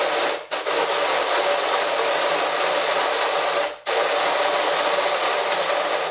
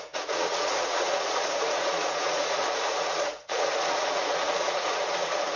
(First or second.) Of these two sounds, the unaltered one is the first